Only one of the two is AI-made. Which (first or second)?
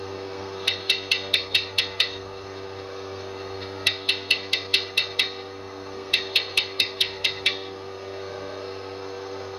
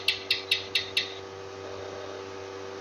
first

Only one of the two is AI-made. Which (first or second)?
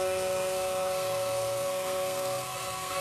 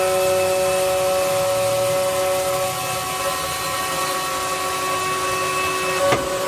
first